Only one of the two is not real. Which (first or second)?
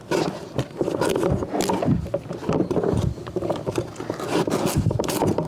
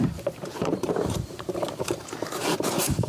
second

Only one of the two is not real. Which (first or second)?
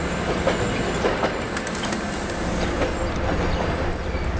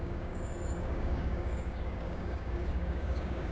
second